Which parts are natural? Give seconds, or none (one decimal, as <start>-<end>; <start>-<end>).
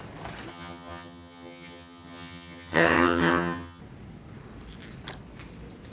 0.0-0.5; 3.8-5.9